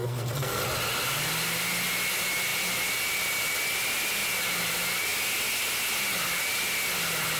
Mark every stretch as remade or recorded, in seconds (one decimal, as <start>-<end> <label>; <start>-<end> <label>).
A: 0.0-0.6 remade; 0.6-7.4 recorded

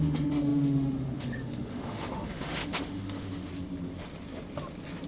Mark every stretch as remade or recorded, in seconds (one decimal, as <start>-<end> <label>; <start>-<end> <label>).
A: 0.0-3.5 remade; 3.5-5.1 recorded

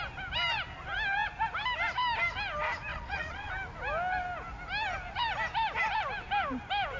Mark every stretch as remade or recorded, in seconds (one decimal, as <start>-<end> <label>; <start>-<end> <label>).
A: 0.0-2.9 recorded; 2.9-3.5 remade; 3.5-7.0 recorded

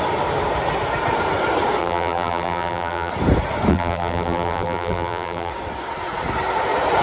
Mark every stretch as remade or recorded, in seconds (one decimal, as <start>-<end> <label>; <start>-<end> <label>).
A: 0.0-1.8 recorded; 1.8-3.1 remade; 3.1-3.7 recorded; 3.7-5.5 remade; 5.5-7.0 recorded

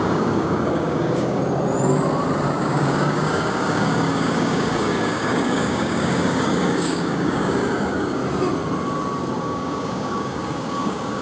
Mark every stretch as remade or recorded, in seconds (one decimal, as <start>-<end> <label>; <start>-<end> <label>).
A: 0.0-1.4 remade; 1.4-2.6 recorded; 2.6-8.2 remade; 8.2-9.4 recorded; 9.4-11.2 remade

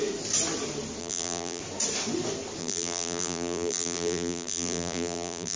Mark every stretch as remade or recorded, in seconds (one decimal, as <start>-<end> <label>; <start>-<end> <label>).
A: 0.0-1.0 recorded; 1.0-1.6 remade; 1.6-2.6 recorded; 2.6-5.6 remade

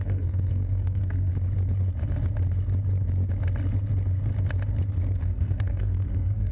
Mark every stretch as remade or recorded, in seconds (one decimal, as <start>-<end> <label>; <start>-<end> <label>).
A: 0.0-1.3 remade; 1.3-5.2 recorded; 5.2-6.5 remade

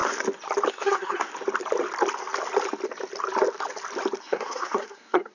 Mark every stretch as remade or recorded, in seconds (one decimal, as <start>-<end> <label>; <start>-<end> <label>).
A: 0.0-0.7 recorded; 0.7-1.3 remade; 1.3-4.2 recorded; 4.2-5.3 remade